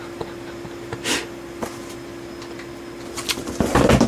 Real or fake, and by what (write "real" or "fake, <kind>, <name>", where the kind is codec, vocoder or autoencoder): real